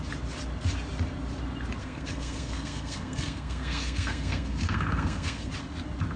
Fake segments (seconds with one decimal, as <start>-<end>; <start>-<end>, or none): 1.8-5.5